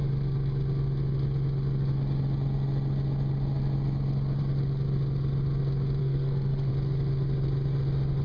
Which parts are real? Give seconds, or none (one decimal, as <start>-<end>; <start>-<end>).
0.0-6.0; 6.7-8.2